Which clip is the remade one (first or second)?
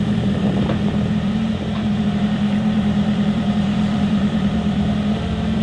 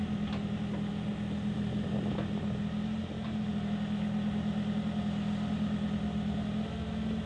first